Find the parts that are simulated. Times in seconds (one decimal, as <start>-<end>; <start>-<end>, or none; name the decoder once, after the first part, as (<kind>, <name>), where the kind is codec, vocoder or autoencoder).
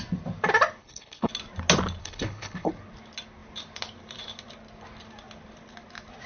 0.8-1.3 (codec, HILCodec); 2.0-2.7